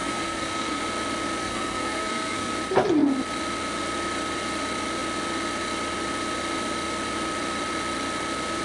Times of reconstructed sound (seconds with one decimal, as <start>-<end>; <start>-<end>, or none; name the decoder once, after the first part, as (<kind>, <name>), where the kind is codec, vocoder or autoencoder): 0.0-0.8 (codec, SNAC); 1.4-2.5